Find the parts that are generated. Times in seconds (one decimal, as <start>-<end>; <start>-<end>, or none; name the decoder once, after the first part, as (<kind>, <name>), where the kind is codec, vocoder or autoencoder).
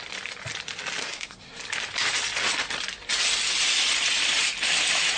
1.0-1.6 (codec, SNAC)